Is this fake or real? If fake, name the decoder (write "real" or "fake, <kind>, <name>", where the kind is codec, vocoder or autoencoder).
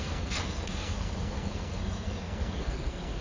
fake, codec, SNAC